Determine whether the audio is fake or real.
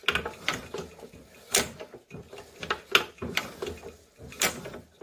real